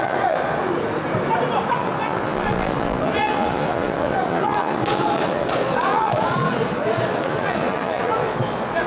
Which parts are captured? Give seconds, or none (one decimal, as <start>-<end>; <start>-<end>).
0.7-1.7